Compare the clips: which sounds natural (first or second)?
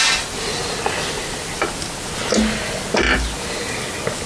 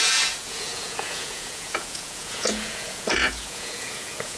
first